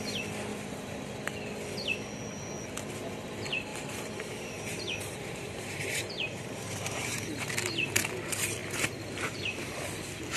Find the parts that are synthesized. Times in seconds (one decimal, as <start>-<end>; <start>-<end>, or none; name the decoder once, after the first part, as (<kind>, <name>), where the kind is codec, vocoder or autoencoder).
0.5-1.2 (vocoder, BigVGAN v2); 3.7-7.5; 8.6-9.9